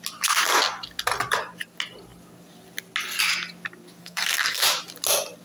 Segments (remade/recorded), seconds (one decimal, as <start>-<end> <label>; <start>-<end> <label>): 0.0-4.0 recorded; 4.0-4.6 remade; 4.6-5.4 recorded